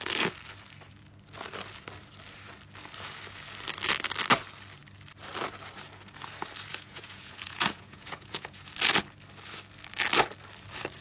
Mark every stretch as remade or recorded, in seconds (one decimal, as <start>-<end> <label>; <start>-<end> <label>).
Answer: 0.0-6.7 recorded; 6.7-8.7 remade; 8.7-11.0 recorded